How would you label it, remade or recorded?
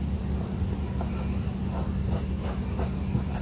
recorded